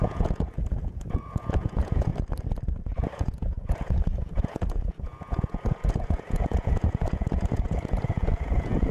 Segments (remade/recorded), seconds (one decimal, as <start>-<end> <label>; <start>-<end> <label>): 0.0-2.1 remade; 2.1-3.0 recorded; 3.0-8.9 remade